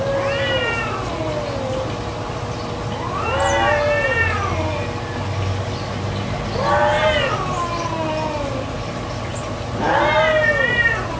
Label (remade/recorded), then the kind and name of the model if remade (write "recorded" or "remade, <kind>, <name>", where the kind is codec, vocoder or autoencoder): recorded